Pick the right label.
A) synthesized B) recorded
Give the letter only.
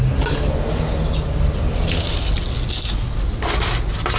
B